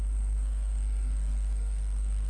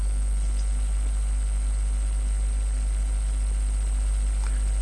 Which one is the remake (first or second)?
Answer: first